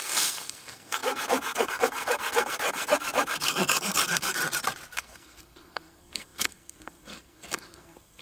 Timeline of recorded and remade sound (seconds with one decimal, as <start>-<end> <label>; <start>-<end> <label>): 0.0-4.4 remade; 4.4-4.9 recorded; 4.9-8.2 remade

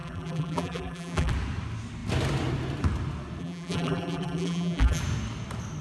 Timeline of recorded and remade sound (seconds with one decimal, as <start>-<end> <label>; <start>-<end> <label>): 0.0-1.3 remade; 1.3-3.4 recorded; 3.4-5.0 remade; 5.0-5.8 recorded